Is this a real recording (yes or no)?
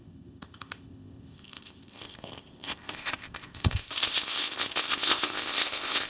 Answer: no